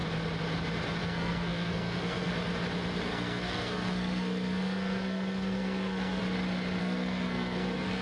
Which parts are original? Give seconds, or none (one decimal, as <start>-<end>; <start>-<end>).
0.0-1.0; 2.3-3.0; 6.2-6.8